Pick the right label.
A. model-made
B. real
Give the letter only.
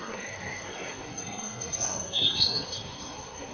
A